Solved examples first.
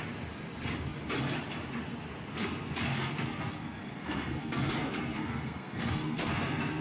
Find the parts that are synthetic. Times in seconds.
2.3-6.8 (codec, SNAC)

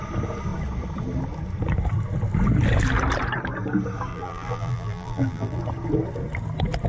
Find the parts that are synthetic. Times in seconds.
4.1-5.6 (vocoder, BigVGAN v2)

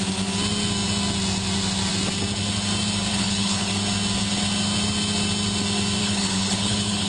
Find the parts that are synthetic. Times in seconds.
3.1-3.7 (codec, HILCodec); 6.0-7.1

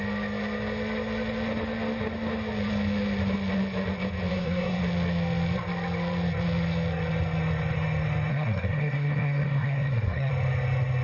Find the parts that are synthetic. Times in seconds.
4.3-4.8 (codec, SNAC); 8.3-10.3

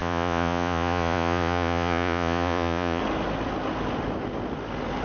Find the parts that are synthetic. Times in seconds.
0.0-3.0 (vocoder, Vocos)

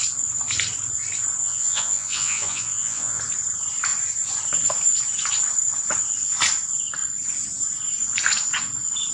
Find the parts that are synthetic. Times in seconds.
1.4-3.2 (vocoder, Vocos)

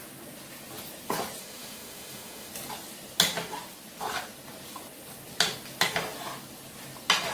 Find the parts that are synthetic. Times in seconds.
1.4-2.5 (autoencoder, DAC-VAE)

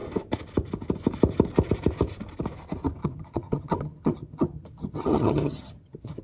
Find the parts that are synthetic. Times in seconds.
3.0-6.2 (vocoder, HiFi-GAN)